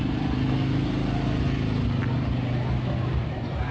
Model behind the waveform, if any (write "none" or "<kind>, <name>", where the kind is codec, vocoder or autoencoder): none